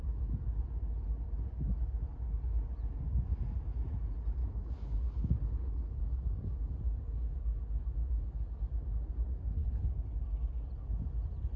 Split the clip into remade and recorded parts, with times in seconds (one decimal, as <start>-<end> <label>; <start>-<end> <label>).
0.0-4.4 recorded; 4.4-6.0 remade; 6.0-9.6 recorded; 9.6-10.2 remade; 10.2-11.6 recorded